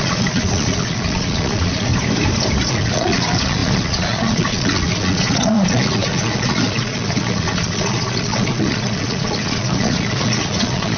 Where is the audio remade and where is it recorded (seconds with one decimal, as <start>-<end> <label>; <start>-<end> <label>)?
0.0-1.9 remade; 1.9-2.7 recorded; 2.7-11.0 remade